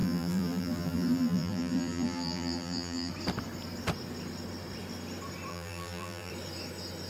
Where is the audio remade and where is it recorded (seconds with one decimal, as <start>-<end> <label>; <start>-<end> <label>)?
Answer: 0.0-3.1 remade; 3.1-5.5 recorded; 5.5-6.3 remade; 6.3-7.1 recorded